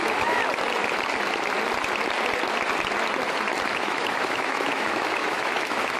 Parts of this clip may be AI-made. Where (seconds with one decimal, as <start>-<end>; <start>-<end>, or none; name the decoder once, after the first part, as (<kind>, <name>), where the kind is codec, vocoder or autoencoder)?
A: 0.0-0.4 (autoencoder, DAC-VAE); 3.7-6.0

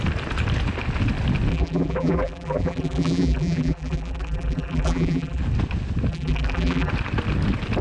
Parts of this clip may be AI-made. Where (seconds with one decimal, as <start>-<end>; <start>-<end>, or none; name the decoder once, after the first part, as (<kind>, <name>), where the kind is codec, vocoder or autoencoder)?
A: 1.5-5.4 (vocoder, BigVGAN v2); 6.1-6.9